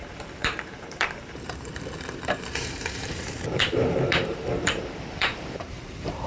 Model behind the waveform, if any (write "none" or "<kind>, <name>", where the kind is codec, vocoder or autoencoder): vocoder, BigVGAN v2